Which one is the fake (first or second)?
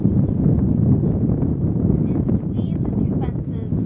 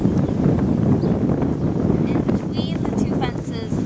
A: first